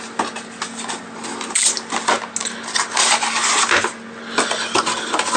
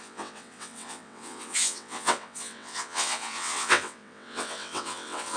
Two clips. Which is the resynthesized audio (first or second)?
second